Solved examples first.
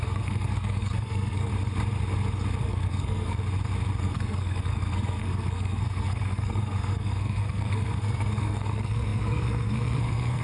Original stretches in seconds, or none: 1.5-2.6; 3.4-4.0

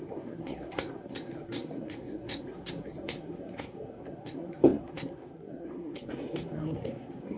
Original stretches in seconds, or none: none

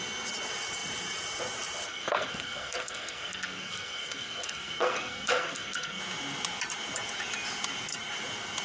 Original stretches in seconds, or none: 0.0-1.9; 6.0-8.6